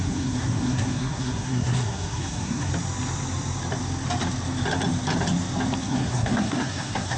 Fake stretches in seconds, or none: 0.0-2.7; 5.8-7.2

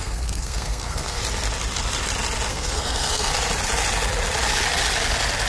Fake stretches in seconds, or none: 0.0-1.2; 2.5-3.3

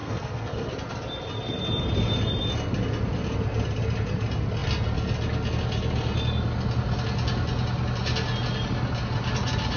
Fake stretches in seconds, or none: 0.0-0.7

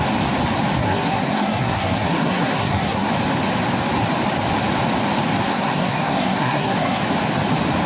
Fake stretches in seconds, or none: 0.8-3.1; 5.4-7.0

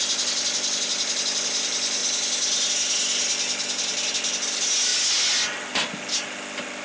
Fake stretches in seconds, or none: none

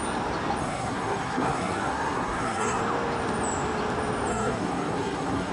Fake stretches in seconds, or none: 0.6-2.8; 4.3-5.5

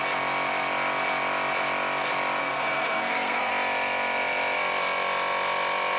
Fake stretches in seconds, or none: 2.4-3.5